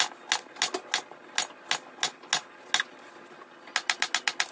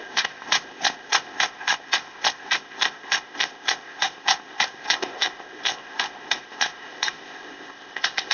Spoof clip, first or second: second